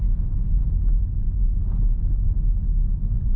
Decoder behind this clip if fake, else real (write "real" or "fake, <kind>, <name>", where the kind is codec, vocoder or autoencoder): real